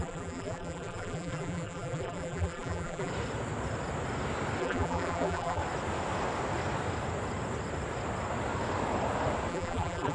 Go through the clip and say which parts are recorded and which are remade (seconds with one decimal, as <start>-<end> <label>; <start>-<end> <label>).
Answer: 0.0-3.1 remade; 3.1-4.6 recorded; 4.6-5.6 remade; 5.6-9.5 recorded; 9.5-10.1 remade